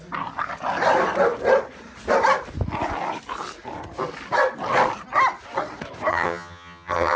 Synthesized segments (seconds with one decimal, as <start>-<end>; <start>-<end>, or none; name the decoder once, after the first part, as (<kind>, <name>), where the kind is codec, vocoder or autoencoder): 6.1-7.2 (vocoder, HiFi-GAN)